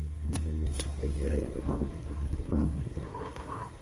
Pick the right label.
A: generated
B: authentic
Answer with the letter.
A